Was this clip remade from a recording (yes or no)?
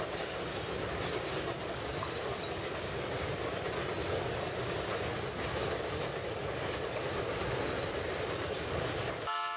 no